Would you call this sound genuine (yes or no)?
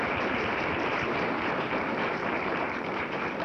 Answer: no